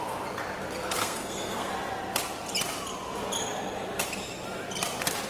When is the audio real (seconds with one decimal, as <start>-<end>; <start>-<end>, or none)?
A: 0.0-1.0; 1.7-5.3